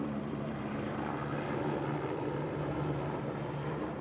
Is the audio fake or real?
fake